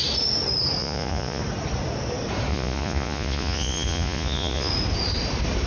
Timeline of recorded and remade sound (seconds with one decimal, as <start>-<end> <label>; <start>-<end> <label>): 0.0-0.8 recorded; 0.8-1.4 remade; 1.4-2.5 recorded; 2.5-4.7 remade; 4.7-5.7 recorded